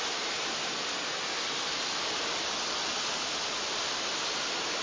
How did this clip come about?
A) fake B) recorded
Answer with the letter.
B